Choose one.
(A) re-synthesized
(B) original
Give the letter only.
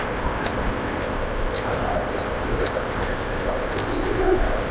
A